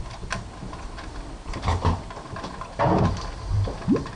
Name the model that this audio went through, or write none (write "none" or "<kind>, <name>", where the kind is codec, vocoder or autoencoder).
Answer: none